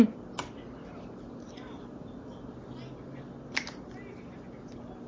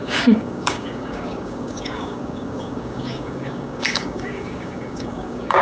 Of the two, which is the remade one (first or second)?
second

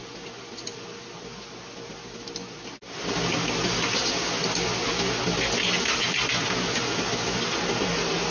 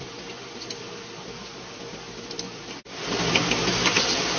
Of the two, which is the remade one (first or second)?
second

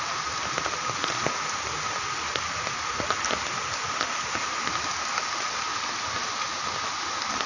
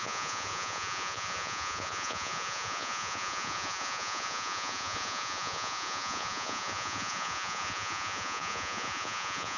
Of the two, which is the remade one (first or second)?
second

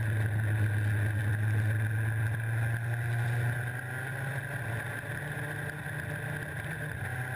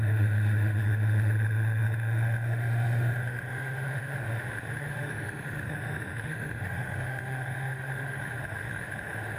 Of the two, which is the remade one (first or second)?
second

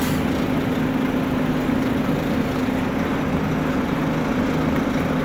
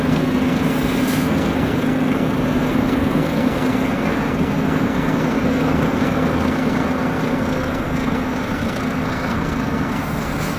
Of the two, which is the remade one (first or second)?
second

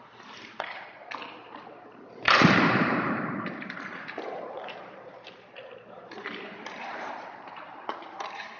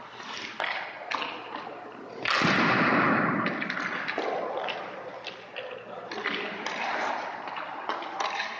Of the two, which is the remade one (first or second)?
first